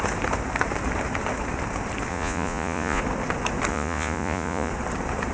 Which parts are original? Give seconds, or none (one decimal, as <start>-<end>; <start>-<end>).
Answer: 0.0-2.1; 3.0-3.7; 4.7-5.3